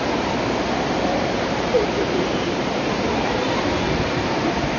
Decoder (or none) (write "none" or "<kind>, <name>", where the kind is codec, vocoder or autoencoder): vocoder, BigVGAN v2